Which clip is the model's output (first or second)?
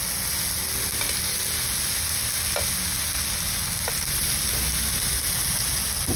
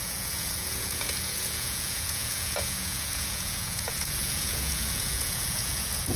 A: second